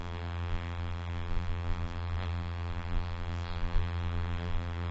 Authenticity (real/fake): fake